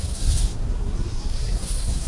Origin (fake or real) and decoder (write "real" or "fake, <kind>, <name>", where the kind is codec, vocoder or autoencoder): fake, codec, SNAC